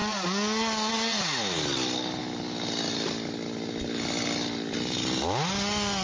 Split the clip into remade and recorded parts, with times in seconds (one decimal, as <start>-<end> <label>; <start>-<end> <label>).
0.0-6.0 recorded